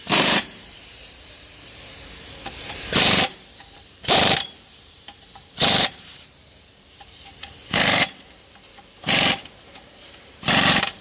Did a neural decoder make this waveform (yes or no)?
yes